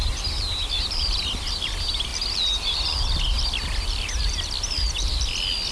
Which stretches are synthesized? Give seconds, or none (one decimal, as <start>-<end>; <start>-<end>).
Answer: none